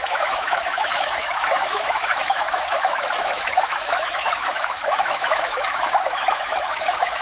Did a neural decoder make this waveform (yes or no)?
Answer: yes